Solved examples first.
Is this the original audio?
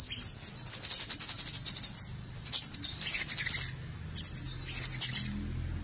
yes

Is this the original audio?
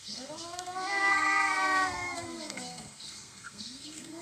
no